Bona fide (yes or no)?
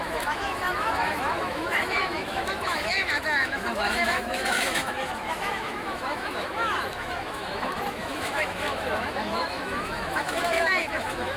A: no